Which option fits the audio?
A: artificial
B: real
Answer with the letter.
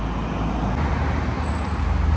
B